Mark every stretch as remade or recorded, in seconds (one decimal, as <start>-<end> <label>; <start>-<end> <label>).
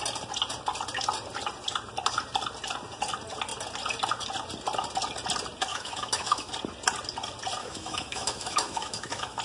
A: 0.0-5.7 recorded; 5.7-6.5 remade; 6.5-7.6 recorded; 7.6-9.4 remade